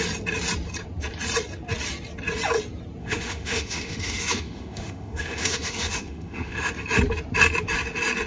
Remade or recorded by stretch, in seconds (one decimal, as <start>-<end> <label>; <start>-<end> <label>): 0.0-3.0 recorded; 3.0-6.7 remade; 6.7-8.3 recorded